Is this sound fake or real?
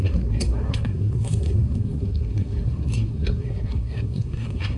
fake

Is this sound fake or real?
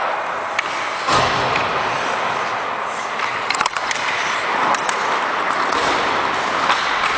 real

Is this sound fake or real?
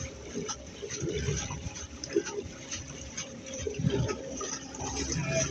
fake